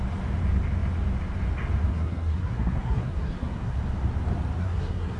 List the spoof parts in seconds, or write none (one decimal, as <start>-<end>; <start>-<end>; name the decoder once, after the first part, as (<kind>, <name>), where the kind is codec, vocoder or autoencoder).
1.9-3.8 (codec, SNAC); 4.6-5.2